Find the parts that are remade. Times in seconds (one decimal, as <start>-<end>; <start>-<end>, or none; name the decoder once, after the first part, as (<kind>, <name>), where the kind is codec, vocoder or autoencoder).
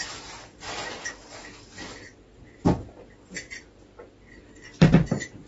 none